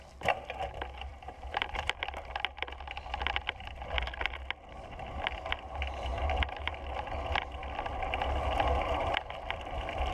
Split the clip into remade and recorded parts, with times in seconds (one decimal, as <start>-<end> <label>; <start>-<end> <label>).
0.0-1.1 recorded; 1.1-2.0 remade; 2.0-6.1 recorded; 6.1-6.7 remade; 6.7-10.1 recorded